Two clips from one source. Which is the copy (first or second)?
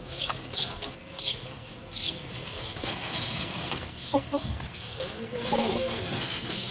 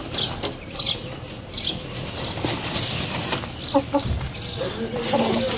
first